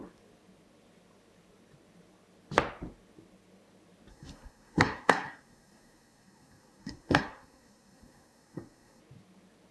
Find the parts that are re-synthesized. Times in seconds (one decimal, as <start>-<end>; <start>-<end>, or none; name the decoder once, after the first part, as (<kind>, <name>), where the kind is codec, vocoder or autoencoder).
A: 4.1-9.0 (codec, SNAC)